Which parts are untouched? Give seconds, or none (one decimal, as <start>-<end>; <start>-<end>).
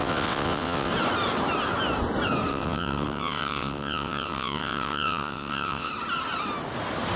0.9-2.5; 5.9-7.2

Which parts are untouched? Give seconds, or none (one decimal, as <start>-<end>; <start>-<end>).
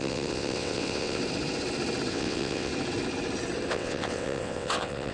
1.2-2.1; 2.7-3.7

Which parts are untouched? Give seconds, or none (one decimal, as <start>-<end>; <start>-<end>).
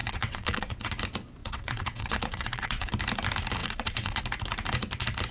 0.9-1.4; 2.9-3.6; 4.2-5.3